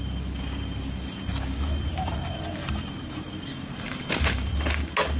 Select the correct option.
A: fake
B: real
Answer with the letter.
B